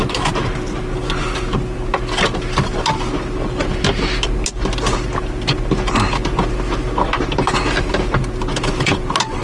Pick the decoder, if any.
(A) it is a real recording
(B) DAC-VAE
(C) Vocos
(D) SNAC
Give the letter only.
A